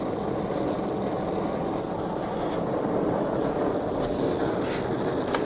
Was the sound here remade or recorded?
recorded